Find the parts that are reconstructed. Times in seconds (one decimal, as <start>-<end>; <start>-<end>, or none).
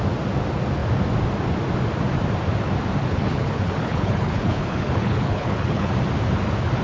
3.0-5.9